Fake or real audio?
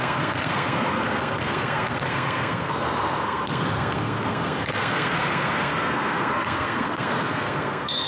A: fake